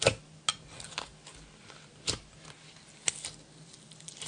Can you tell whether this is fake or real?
real